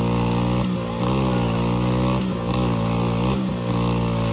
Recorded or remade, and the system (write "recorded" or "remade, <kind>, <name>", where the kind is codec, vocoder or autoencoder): recorded